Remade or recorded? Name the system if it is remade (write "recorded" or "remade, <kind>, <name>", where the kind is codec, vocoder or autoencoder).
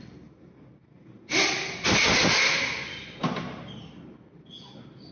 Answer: recorded